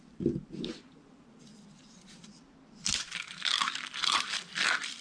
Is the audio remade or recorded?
remade